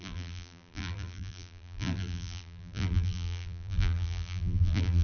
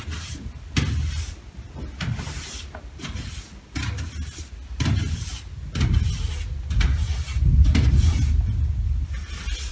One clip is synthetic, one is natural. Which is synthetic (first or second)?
first